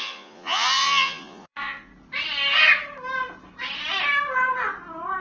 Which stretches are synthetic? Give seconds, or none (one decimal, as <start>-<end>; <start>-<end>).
0.0-1.9